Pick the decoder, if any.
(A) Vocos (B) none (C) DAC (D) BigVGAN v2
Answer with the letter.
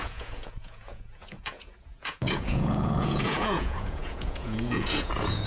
A